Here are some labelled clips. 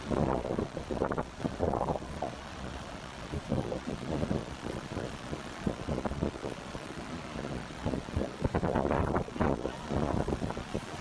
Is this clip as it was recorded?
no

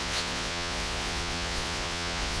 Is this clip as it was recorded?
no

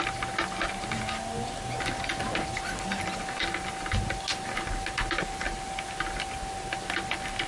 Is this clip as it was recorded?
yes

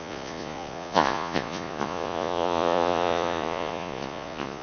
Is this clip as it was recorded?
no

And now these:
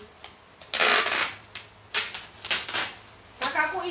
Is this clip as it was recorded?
yes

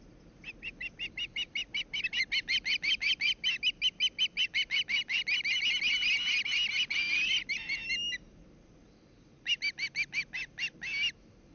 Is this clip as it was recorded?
yes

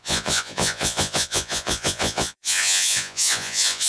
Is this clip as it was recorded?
no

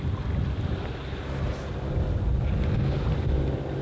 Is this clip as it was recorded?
yes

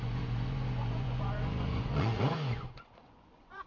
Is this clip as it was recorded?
no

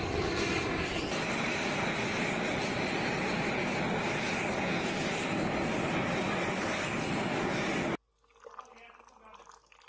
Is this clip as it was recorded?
yes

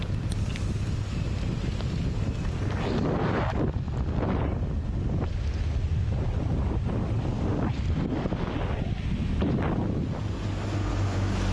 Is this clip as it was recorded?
yes